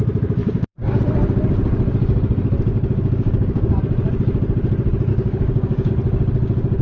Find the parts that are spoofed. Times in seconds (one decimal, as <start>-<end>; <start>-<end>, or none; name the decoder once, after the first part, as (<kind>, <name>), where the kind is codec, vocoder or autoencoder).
0.4-1.0 (codec, DAC); 2.7-3.8; 5.1-5.9